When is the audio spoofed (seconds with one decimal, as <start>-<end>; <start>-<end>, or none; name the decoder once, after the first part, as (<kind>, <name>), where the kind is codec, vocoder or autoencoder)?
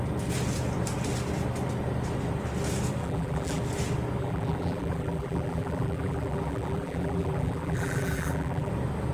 3.0-3.6 (vocoder, BigVGAN v2); 4.2-8.7